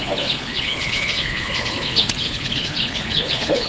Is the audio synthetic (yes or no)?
yes